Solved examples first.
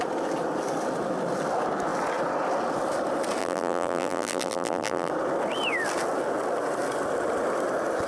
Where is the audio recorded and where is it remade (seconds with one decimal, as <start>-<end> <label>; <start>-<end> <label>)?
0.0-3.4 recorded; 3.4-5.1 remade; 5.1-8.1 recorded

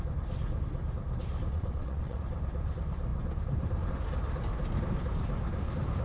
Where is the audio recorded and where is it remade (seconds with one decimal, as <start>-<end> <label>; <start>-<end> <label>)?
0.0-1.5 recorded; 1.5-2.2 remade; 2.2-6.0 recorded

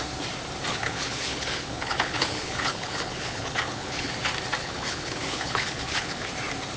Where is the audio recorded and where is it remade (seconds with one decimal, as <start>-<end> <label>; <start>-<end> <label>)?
0.0-0.7 recorded; 0.7-4.1 remade; 4.1-4.6 recorded; 4.6-6.3 remade; 6.3-6.8 recorded

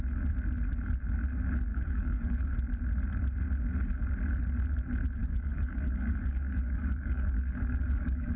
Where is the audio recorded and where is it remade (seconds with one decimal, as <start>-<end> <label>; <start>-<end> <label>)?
0.0-1.7 recorded; 1.7-2.5 remade; 2.5-5.2 recorded; 5.2-8.4 remade

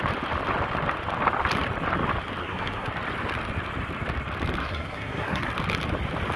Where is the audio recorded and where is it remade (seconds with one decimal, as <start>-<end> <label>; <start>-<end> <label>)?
0.0-2.4 recorded; 2.4-2.9 remade; 2.9-4.6 recorded; 4.6-5.5 remade; 5.5-6.4 recorded